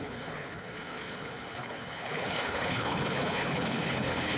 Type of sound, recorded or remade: remade